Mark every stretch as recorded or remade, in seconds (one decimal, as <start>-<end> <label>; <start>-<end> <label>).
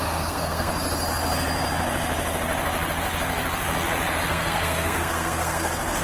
0.0-0.7 remade; 0.7-4.3 recorded; 4.3-6.0 remade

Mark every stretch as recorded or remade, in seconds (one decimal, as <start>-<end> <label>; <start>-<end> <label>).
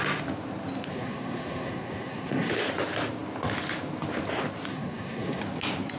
0.0-0.9 recorded; 0.9-2.5 remade; 2.5-4.7 recorded; 4.7-5.4 remade; 5.4-6.0 recorded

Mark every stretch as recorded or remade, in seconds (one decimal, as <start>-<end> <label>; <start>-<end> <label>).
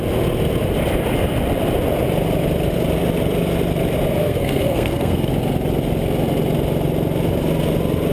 0.0-4.2 recorded; 4.2-5.3 remade; 5.3-8.1 recorded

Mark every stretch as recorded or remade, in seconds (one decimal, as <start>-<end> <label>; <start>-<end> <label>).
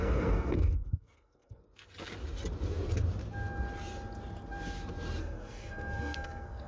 0.0-1.6 remade; 1.6-5.2 recorded; 5.2-6.7 remade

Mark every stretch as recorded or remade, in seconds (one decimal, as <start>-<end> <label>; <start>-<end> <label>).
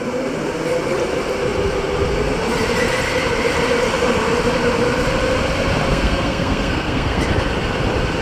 0.0-5.9 recorded; 5.9-7.2 remade; 7.2-8.2 recorded